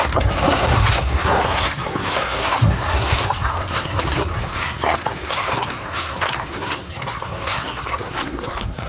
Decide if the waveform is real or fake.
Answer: fake